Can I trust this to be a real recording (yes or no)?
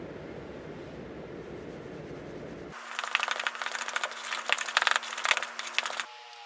yes